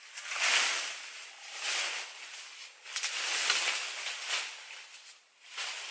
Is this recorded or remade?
recorded